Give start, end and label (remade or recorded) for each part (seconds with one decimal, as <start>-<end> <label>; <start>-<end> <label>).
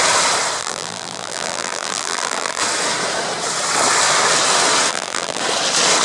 0.0-0.6 recorded; 0.6-2.6 remade; 2.6-4.9 recorded; 4.9-5.4 remade; 5.4-6.0 recorded